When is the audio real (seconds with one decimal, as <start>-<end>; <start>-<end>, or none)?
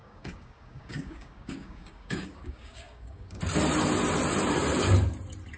3.4-5.6